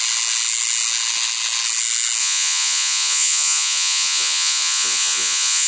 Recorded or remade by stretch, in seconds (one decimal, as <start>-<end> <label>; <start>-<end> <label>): 0.0-2.2 recorded; 2.2-5.7 remade